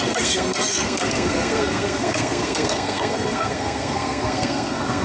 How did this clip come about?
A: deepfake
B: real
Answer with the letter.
A